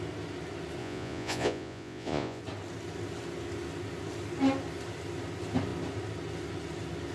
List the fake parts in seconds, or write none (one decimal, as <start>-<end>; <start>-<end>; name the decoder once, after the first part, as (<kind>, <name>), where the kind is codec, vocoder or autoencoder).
0.8-2.4 (vocoder, Vocos)